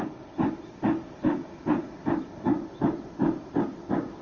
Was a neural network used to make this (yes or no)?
no